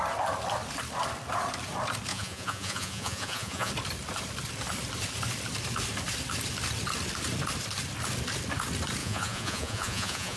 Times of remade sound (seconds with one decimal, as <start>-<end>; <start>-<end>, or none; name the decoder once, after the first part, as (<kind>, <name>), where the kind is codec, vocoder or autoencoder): 2.1-3.7 (vocoder, Vocos); 9.0-10.4